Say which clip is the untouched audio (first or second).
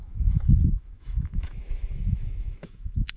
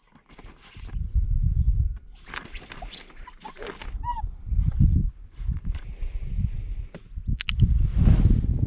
second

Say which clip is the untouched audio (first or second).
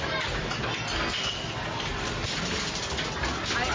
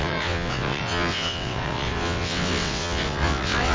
first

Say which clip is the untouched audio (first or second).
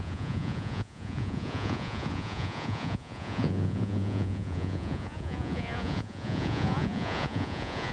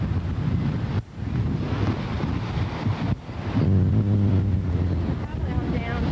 second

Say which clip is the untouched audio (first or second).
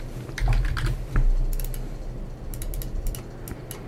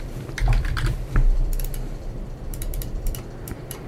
first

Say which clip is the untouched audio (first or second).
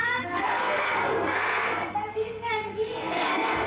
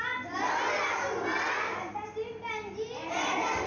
second